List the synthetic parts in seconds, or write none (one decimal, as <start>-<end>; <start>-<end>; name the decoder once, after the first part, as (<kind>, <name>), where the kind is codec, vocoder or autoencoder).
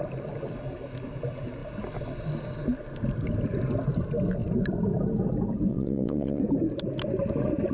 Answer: 5.7-6.4 (vocoder, WaveNeXt)